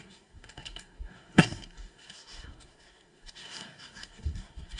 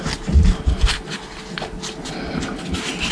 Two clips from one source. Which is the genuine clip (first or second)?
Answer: second